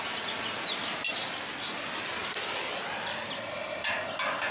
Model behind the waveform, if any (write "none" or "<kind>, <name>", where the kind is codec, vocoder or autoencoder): none